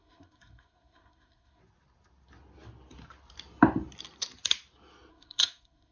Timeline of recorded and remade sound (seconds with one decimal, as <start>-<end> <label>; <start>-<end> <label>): 0.0-1.6 remade; 1.6-5.1 recorded; 5.1-5.9 remade